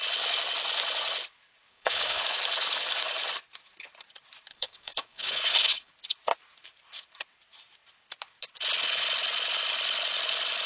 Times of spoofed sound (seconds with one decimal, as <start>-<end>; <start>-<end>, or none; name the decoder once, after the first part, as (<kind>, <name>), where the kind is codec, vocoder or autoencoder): 1.7-2.2 (codec, DAC); 4.5-5.9